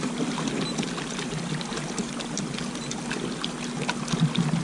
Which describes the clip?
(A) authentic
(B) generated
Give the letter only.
A